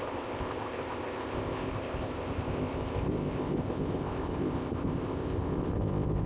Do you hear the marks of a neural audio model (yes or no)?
yes